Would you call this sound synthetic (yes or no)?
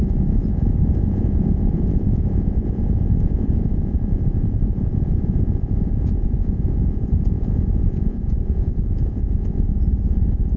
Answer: yes